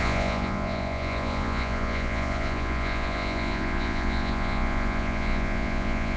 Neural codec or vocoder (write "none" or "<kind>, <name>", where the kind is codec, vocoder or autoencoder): vocoder, Vocos